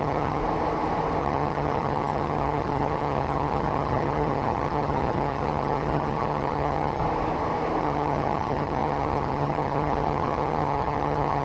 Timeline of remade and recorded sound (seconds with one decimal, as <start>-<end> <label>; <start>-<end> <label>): 0.0-0.4 remade; 0.4-1.2 recorded; 1.2-7.0 remade; 7.0-7.8 recorded; 7.8-11.4 remade